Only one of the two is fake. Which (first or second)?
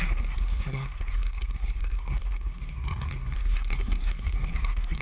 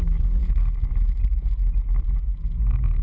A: first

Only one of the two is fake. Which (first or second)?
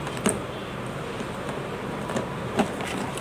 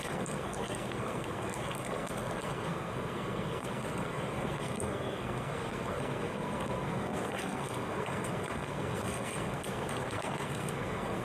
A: second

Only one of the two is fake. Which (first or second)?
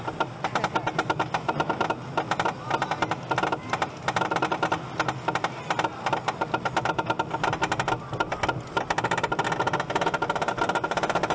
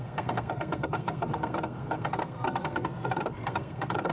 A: second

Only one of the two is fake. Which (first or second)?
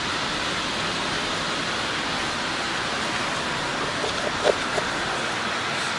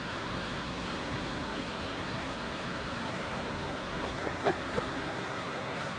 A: second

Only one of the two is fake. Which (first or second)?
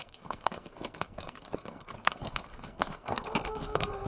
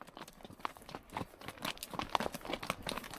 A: first